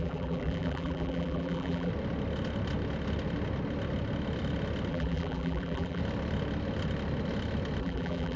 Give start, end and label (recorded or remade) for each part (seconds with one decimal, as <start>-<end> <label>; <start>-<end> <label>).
0.0-1.9 remade; 1.9-4.9 recorded; 4.9-6.0 remade; 6.0-7.8 recorded; 7.8-8.4 remade